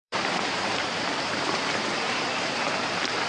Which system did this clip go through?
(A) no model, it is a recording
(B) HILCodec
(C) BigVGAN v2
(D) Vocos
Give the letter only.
C